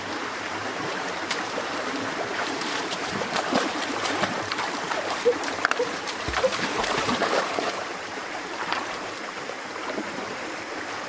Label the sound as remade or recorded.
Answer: remade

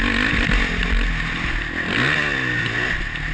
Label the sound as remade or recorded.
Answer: recorded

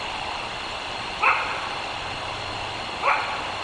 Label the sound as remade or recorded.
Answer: remade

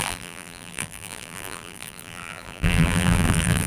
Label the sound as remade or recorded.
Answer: remade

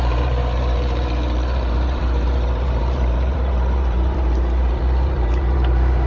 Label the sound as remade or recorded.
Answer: remade